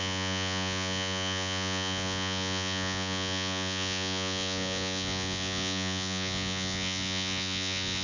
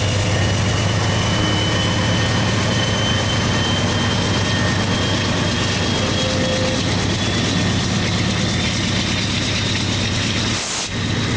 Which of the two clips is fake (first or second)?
first